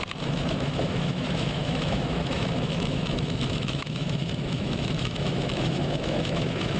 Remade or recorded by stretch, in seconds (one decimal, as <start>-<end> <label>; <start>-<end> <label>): 0.0-6.8 remade